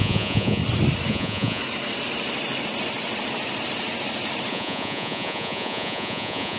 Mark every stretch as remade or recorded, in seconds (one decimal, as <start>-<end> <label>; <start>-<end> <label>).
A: 0.0-0.6 remade; 0.6-1.1 recorded; 1.1-1.6 remade; 1.6-4.5 recorded; 4.5-6.6 remade